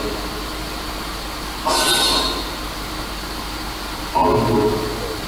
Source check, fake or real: real